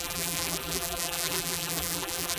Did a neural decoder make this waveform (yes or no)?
yes